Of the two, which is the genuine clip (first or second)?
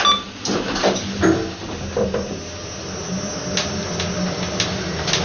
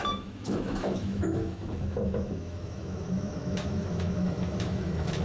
first